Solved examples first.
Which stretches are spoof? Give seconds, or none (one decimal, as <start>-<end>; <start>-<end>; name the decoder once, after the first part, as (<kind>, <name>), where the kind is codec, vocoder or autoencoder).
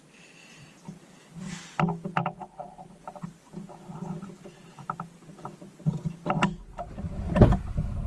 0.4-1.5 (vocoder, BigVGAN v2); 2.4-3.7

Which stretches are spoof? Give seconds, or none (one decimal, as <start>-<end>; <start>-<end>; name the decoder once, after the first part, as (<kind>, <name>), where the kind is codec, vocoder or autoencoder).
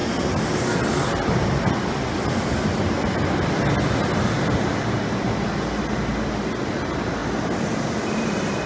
none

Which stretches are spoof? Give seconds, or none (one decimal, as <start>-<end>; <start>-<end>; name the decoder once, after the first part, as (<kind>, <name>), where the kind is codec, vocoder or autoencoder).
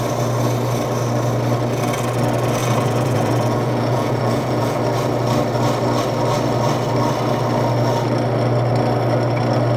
2.6-4.8 (vocoder, Vocos)